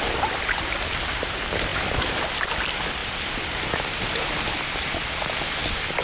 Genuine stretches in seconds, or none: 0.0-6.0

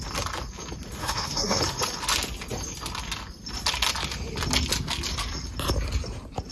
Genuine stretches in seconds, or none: 0.0-1.0; 1.6-6.5

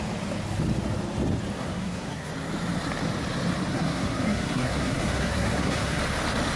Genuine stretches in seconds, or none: 0.0-1.5; 2.3-3.7; 6.0-6.6

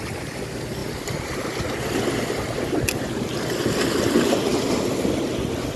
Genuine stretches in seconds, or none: 0.0-5.8

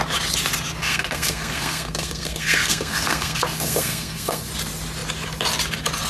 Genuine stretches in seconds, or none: 0.0-0.8; 4.5-6.1

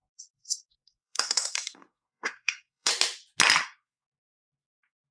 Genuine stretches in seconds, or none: 2.9-3.6